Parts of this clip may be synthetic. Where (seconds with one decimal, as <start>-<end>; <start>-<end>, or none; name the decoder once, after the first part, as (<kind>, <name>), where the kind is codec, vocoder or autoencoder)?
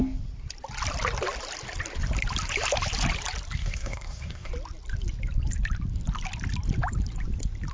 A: 3.6-4.5 (codec, SNAC)